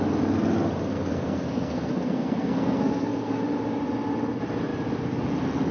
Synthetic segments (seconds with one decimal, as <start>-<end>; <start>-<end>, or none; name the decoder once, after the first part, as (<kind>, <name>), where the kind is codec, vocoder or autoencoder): 0.9-3.4 (codec, SNAC)